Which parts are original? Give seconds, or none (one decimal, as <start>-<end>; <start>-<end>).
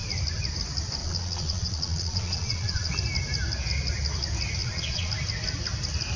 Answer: 0.0-1.0; 2.9-4.6; 5.1-6.2